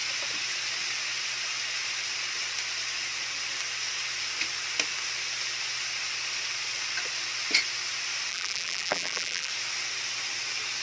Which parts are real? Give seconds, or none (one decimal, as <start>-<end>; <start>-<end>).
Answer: 0.0-8.3; 9.5-10.8